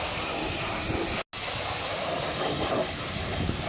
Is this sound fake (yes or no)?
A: no